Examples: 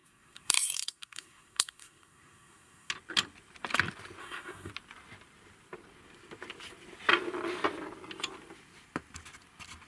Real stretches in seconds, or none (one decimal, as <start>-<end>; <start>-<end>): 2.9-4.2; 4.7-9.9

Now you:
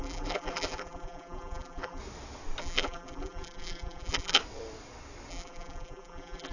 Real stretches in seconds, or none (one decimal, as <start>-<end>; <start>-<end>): 2.0-2.6; 4.4-5.3

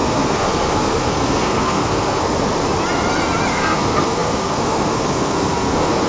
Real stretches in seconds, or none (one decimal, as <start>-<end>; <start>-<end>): 2.2-3.5

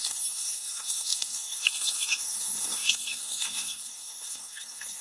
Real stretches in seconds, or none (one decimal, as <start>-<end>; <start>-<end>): none

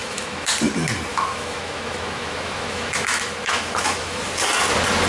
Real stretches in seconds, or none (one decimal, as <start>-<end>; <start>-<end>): 0.5-1.1; 4.2-5.1